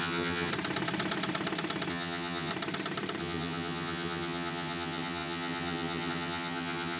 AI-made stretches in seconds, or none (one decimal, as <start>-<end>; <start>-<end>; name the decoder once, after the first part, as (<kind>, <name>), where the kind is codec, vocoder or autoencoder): 0.0-0.5 (vocoder, HiFi-GAN); 1.9-2.5; 3.2-7.0